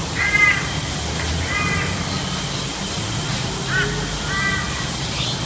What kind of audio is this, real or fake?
real